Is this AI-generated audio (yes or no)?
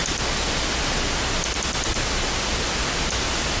no